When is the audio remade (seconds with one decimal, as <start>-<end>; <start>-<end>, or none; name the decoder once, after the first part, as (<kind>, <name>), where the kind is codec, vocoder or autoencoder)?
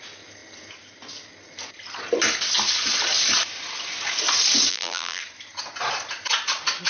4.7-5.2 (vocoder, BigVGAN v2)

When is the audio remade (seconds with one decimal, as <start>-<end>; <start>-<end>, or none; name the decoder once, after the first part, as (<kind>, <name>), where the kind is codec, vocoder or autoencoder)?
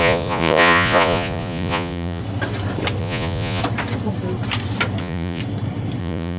0.0-2.2 (vocoder, Vocos); 3.0-3.6; 5.0-5.4; 6.0-6.4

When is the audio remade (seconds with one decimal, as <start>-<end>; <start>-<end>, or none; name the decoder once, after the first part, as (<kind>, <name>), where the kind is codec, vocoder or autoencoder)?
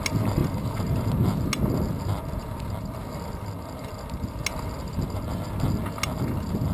none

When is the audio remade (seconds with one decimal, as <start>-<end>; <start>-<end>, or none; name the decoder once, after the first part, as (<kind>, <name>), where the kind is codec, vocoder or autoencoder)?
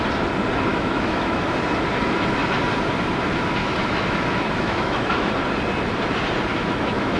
0.7-1.5 (autoencoder, DAC-VAE); 3.6-5.3; 6.5-7.2